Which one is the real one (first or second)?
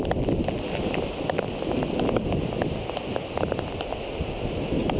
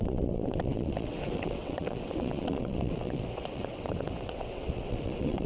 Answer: first